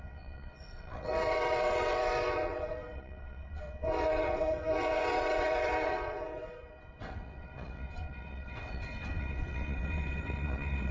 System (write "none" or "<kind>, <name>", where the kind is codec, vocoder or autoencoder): vocoder, WaveNeXt